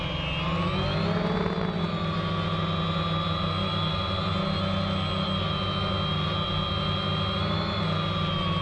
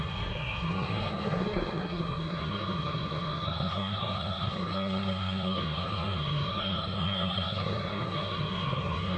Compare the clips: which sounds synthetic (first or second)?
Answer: second